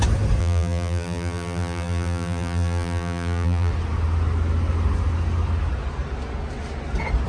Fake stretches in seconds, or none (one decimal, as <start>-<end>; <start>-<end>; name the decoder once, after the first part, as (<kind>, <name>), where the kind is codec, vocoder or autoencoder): 0.4-3.7 (vocoder, BigVGAN v2)